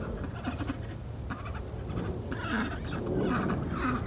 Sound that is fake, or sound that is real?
real